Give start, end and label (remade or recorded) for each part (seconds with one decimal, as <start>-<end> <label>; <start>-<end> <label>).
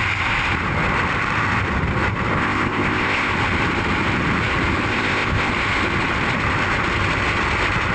0.0-2.3 recorded; 2.3-3.3 remade; 3.3-4.9 recorded; 4.9-5.5 remade; 5.5-7.9 recorded